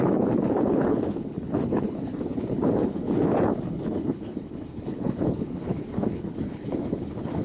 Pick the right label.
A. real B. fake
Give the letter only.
B